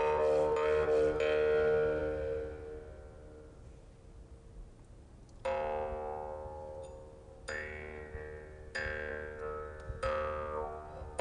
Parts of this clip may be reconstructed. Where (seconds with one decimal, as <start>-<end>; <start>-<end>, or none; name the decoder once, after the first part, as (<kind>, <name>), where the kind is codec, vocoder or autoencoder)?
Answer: none